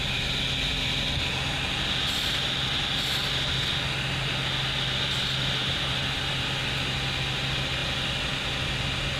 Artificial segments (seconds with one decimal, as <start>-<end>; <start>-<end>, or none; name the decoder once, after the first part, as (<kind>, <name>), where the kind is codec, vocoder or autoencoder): none